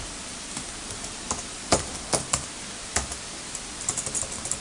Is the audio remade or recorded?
recorded